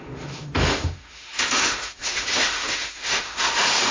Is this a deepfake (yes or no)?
yes